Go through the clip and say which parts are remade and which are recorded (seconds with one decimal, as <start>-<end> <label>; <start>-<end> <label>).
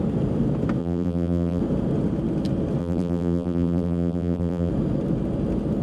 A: 0.0-0.8 recorded; 0.8-1.6 remade; 1.6-2.8 recorded; 2.8-4.7 remade; 4.7-5.8 recorded